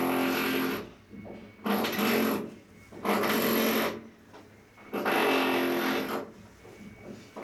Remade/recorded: recorded